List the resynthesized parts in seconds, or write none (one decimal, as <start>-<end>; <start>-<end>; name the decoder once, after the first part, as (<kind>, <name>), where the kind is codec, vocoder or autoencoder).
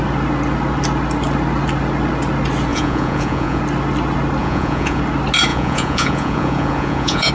2.7-3.6 (vocoder, Vocos); 4.4-5.0; 5.5-7.3